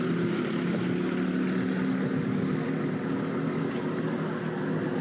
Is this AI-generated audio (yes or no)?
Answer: no